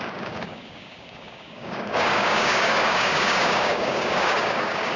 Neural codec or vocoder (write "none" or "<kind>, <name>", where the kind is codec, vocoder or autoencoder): codec, DAC